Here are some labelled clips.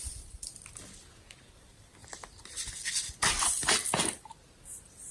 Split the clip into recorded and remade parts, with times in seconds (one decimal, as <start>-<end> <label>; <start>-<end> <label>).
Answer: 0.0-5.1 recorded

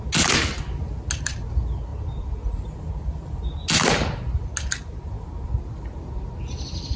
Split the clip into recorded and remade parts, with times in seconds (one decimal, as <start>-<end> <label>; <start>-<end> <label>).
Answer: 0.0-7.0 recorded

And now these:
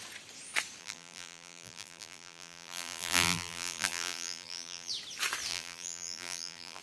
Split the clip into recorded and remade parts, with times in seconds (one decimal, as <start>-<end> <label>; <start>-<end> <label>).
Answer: 0.0-0.8 recorded; 0.8-4.9 remade; 4.9-5.5 recorded; 5.5-6.8 remade

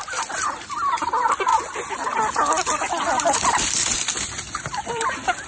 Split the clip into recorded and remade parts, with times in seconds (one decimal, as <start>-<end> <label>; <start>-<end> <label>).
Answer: 0.0-1.5 remade; 1.5-3.5 recorded; 3.5-5.5 remade